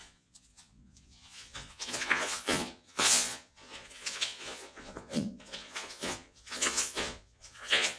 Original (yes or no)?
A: no